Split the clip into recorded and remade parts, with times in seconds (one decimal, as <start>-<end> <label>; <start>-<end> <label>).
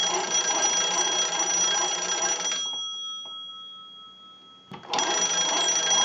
0.0-6.0 recorded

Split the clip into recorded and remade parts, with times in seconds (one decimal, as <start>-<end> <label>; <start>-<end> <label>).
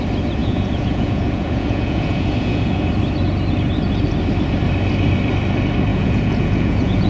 0.0-0.4 recorded; 0.4-2.9 remade; 2.9-5.9 recorded; 5.9-7.1 remade